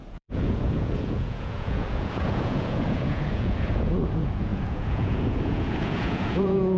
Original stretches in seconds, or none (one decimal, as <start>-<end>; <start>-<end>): none